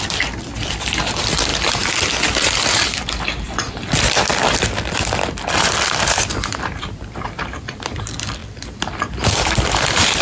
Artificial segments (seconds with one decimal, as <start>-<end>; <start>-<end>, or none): 0.0-1.5; 2.3-10.2